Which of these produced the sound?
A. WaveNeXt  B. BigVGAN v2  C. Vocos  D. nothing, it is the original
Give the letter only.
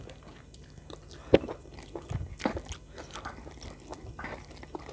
D